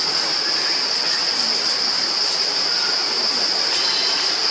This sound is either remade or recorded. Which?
recorded